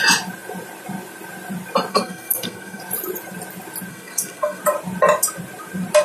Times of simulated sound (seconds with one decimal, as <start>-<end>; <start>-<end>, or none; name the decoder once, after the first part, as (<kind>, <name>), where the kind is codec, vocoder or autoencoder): 1.9-2.8 (codec, SNAC); 3.9-4.6